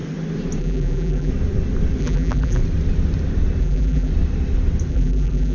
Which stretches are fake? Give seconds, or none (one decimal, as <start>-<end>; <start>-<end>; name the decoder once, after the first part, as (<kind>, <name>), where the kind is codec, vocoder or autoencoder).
0.6-1.3 (vocoder, BigVGAN v2); 2.0-2.6; 3.6-4.1; 4.9-5.5